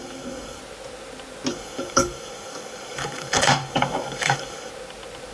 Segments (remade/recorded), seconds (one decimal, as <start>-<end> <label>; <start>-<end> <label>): 0.0-0.6 remade; 0.6-1.5 recorded; 1.5-4.7 remade; 4.7-5.3 recorded